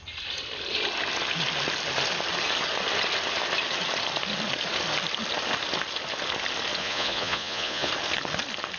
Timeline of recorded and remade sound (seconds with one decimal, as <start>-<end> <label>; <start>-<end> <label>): 0.0-6.8 recorded; 6.8-7.9 remade; 7.9-8.8 recorded